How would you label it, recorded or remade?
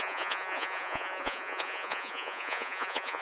remade